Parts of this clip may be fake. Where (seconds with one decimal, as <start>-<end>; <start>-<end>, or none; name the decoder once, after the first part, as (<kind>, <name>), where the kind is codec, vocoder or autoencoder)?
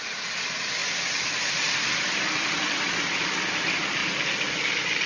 0.8-3.4 (vocoder, BigVGAN v2)